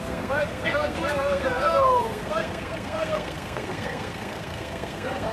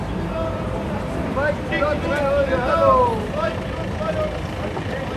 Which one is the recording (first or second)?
second